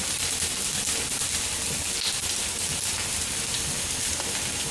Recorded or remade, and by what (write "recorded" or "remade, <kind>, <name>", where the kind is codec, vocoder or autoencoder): recorded